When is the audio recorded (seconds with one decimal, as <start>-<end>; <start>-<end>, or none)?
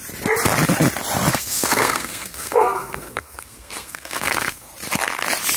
0.0-1.3; 4.7-5.6